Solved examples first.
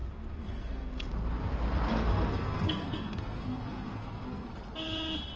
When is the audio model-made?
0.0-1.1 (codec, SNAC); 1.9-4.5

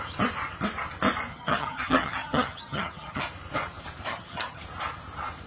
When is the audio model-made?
1.3-3.2 (vocoder, HiFi-GAN); 4.1-4.6

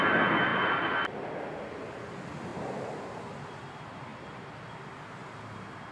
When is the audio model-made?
2.5-3.2 (vocoder, BigVGAN v2)